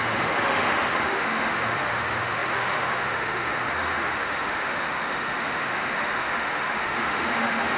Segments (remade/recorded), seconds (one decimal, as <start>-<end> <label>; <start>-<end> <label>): 0.0-7.8 remade